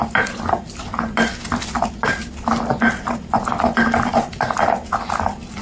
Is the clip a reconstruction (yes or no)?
no